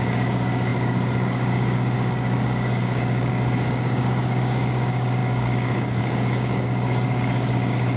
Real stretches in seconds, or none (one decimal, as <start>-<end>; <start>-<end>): none